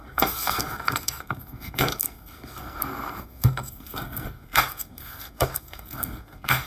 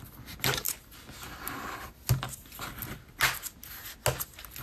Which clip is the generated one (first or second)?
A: first